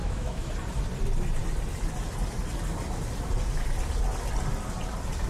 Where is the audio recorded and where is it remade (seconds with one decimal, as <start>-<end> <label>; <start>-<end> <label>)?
0.0-0.5 remade; 0.5-5.3 recorded